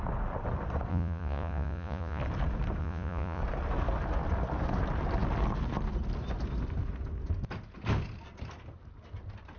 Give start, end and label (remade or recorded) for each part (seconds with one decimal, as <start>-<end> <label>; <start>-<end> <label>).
0.0-0.9 recorded; 0.9-2.2 remade; 2.2-2.8 recorded; 2.8-3.4 remade; 3.4-9.6 recorded